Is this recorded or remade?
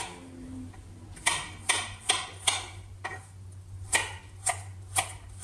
recorded